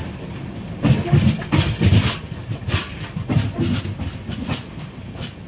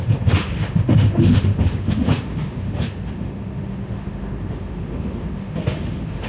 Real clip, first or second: first